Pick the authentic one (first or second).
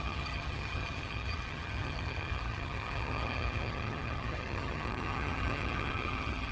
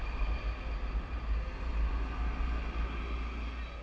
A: second